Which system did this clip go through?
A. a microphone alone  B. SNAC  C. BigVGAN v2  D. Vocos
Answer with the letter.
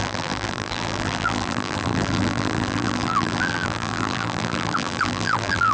C